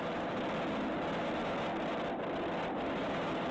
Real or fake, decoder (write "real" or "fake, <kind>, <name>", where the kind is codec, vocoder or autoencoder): real